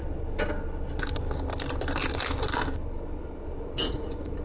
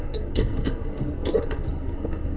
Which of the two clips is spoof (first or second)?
second